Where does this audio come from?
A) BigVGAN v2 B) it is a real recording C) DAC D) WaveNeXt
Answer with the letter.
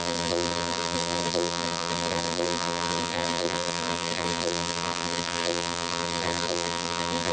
A